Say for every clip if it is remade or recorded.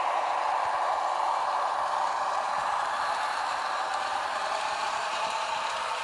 remade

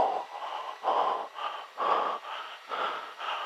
remade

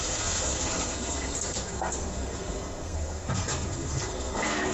remade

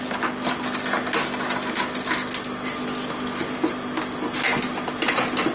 recorded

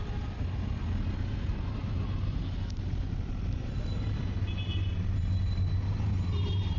recorded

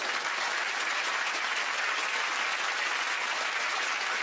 recorded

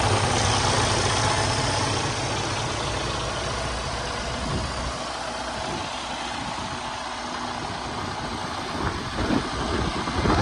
recorded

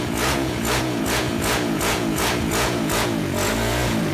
remade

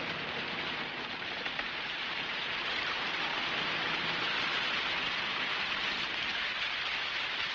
remade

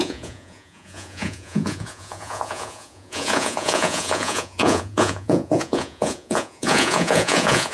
remade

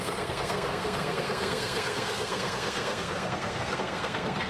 remade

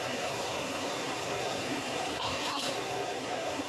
remade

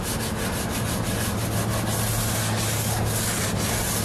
recorded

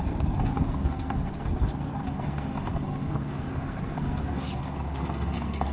remade